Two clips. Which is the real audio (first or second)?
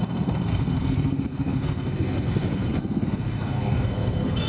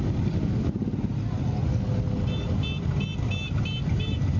second